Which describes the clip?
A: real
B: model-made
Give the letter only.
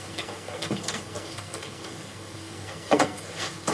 B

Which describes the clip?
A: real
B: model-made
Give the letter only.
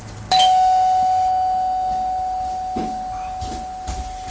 A